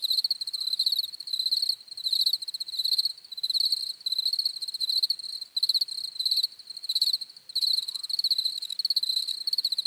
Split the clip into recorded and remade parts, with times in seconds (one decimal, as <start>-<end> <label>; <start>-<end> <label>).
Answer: 0.0-9.9 recorded